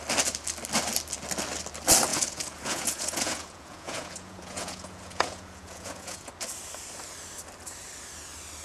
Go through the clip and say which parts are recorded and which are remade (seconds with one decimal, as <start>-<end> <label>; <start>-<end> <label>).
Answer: 0.0-2.1 recorded; 2.1-6.3 remade; 6.3-8.6 recorded